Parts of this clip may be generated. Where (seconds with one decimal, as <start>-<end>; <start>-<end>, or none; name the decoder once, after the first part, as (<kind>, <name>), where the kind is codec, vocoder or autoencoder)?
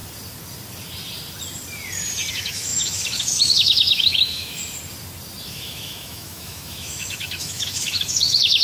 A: 2.3-4.6 (autoencoder, DAC-VAE); 5.5-8.6